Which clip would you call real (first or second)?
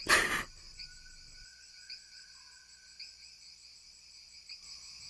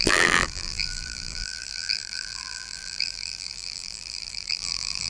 first